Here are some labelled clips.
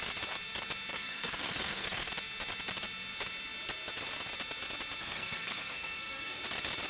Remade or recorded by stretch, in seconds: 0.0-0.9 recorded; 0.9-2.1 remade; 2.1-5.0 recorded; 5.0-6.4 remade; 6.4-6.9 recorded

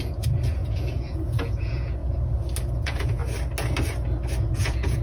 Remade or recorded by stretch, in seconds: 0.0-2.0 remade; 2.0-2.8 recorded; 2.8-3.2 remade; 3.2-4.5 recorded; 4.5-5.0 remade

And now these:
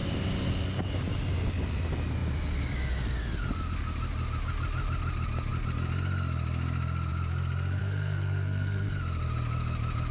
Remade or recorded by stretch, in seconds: 0.0-7.8 recorded; 7.8-8.9 remade; 8.9-10.1 recorded

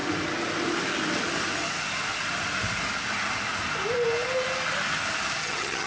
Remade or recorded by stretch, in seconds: 0.0-5.4 recorded; 5.4-5.9 remade

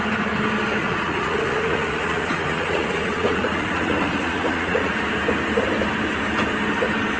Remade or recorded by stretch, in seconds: 0.0-0.8 recorded; 0.8-4.9 remade; 4.9-7.2 recorded

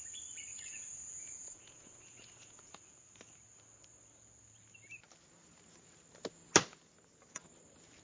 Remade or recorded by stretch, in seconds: 0.0-0.5 recorded; 0.5-2.7 remade; 2.7-8.0 recorded

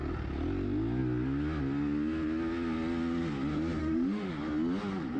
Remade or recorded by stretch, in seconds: 0.0-3.8 recorded; 3.8-4.3 remade; 4.3-5.2 recorded